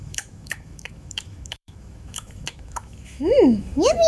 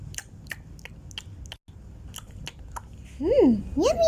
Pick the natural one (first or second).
second